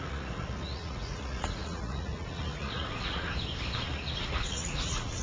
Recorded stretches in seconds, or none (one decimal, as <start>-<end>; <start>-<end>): 3.3-3.8